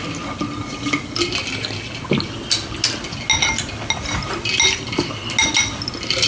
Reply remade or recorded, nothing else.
recorded